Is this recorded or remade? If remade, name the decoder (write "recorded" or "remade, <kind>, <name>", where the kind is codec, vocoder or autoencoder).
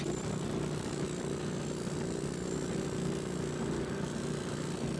recorded